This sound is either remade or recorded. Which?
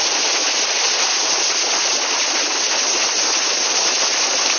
recorded